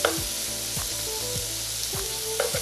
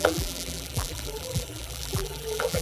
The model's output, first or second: second